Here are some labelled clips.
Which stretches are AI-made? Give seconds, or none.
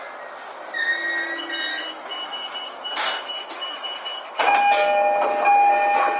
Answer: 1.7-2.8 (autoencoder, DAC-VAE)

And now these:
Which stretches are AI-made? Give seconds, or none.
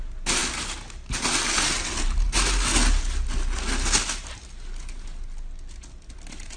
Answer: none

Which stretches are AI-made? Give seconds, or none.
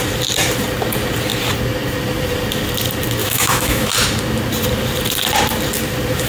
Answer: 3.2-3.9 (autoencoder, DAC-VAE)